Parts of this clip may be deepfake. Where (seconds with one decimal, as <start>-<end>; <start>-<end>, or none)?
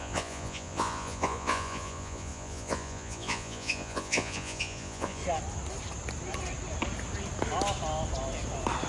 0.0-5.2